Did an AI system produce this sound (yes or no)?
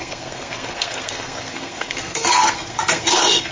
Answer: yes